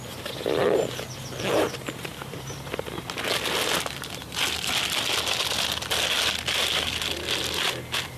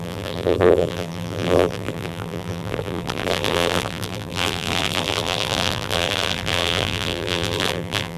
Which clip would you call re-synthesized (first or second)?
second